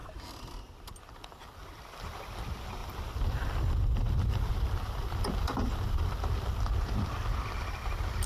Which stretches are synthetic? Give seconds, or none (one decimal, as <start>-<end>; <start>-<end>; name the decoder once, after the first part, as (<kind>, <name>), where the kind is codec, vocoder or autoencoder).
2.8-6.7 (vocoder, BigVGAN v2)